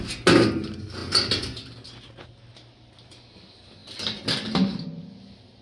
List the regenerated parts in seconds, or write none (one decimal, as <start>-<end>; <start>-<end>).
none